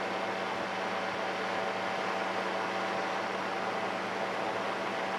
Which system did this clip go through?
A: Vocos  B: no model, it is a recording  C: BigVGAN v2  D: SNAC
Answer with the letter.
B